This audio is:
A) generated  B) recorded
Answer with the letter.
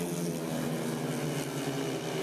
B